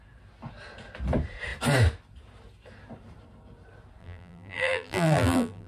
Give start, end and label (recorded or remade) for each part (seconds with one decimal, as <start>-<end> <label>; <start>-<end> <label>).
0.0-4.0 recorded; 4.0-5.7 remade